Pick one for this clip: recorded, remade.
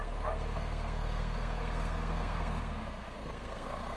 remade